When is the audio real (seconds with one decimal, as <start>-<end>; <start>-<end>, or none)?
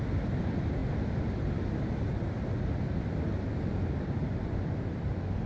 0.0-5.5